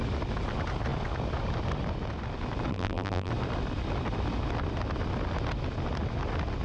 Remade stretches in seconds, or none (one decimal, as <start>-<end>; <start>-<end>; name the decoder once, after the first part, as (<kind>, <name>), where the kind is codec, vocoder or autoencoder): 2.7-3.3 (vocoder, BigVGAN v2)